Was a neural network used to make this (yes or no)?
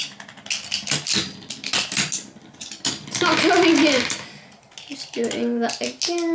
no